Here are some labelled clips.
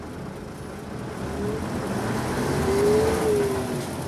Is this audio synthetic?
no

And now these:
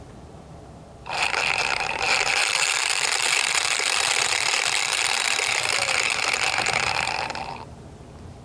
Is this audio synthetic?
yes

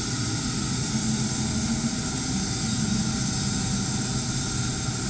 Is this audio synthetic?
no